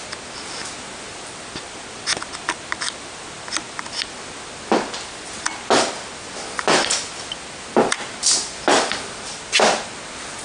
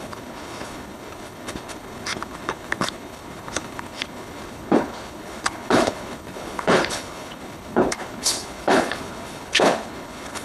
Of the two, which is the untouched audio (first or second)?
first